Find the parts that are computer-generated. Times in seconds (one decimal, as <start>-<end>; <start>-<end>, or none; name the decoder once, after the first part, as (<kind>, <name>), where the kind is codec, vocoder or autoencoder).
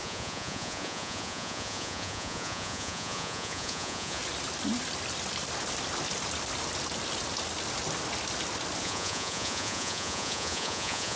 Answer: 0.0-4.2 (vocoder, Vocos); 8.8-11.2